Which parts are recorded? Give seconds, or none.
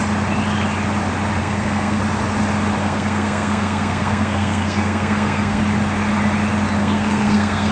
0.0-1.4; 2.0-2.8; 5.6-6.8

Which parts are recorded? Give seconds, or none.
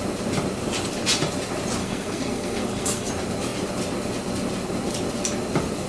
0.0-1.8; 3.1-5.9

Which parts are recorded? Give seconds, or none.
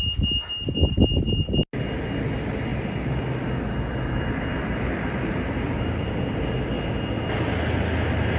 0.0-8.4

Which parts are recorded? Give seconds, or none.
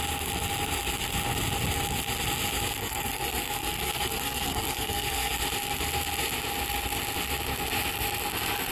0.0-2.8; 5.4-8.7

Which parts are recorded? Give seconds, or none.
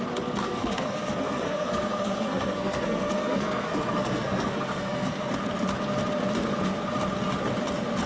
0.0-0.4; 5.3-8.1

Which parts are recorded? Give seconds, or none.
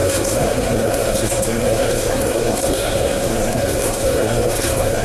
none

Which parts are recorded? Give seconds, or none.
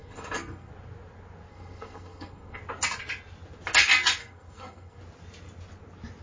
0.7-1.5; 2.6-4.2; 5.0-6.2